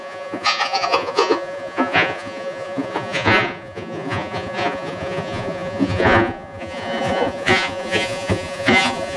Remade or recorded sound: remade